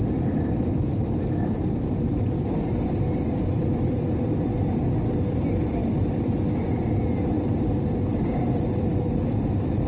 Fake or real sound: fake